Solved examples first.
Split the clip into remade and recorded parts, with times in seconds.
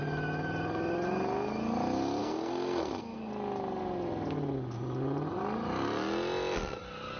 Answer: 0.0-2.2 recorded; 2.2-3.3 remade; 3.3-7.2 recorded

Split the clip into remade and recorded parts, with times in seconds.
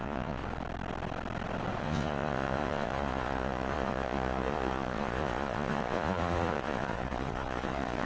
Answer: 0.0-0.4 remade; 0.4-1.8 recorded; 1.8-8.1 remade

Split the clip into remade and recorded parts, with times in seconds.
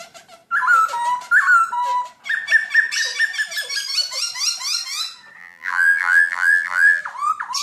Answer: 0.0-5.4 recorded; 5.4-7.0 remade; 7.0-7.6 recorded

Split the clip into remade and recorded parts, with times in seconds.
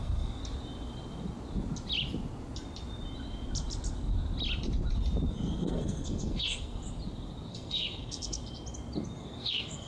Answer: 0.0-0.4 remade; 0.4-5.3 recorded; 5.3-6.8 remade; 6.8-7.5 recorded; 7.5-8.4 remade; 8.4-9.2 recorded; 9.2-9.9 remade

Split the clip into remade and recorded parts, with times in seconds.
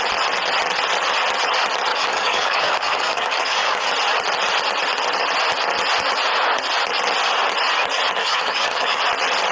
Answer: 0.0-1.9 recorded; 1.9-3.9 remade; 3.9-8.2 recorded; 8.2-9.0 remade; 9.0-9.5 recorded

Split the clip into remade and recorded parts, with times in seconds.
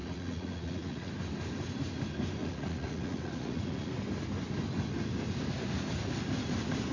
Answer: 0.0-1.1 remade; 1.1-2.4 recorded; 2.4-3.9 remade; 3.9-6.9 recorded